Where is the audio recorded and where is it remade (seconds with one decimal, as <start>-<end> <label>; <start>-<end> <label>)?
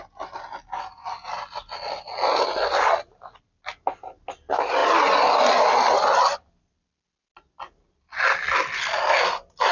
0.0-9.7 recorded